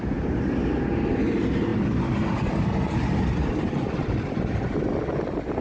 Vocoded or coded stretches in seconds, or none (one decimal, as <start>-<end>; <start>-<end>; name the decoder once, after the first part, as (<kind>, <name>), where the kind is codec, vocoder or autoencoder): none